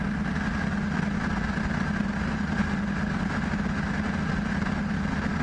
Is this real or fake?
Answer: real